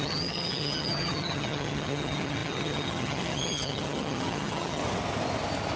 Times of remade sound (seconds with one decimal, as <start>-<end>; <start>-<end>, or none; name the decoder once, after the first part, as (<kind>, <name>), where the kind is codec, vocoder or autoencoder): 0.0-4.8 (vocoder, HiFi-GAN)